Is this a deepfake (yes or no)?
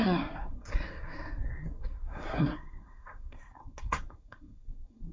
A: yes